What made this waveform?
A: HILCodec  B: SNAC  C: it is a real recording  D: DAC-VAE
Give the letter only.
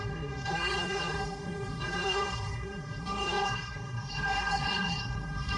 B